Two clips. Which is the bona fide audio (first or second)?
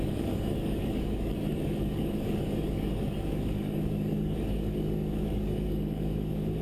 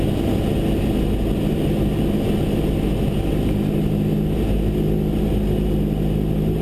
second